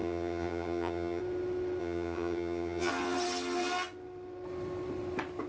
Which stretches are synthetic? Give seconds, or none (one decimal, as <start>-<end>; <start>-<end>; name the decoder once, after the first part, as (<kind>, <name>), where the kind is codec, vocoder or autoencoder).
0.0-1.2 (vocoder, HiFi-GAN); 1.8-2.9